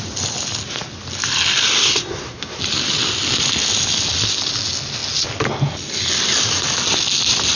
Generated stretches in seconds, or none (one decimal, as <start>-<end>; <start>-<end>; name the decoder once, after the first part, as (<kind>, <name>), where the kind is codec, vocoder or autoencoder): 1.8-2.6 (codec, SNAC)